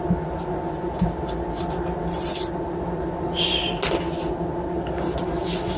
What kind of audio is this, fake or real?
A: real